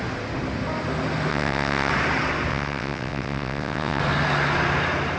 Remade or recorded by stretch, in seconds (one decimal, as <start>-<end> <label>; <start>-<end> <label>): 0.0-1.3 recorded; 1.3-1.9 remade; 1.9-2.5 recorded; 2.5-4.0 remade; 4.0-5.2 recorded